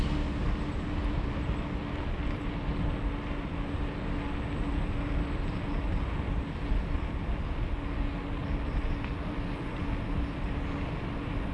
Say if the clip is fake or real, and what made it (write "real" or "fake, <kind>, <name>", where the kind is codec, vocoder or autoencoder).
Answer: real